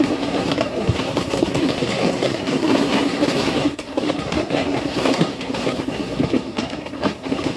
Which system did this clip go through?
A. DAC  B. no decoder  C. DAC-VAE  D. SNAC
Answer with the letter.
D